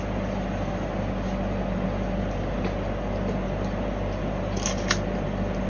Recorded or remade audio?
recorded